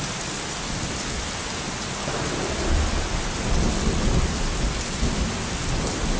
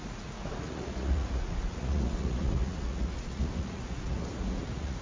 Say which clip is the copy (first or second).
second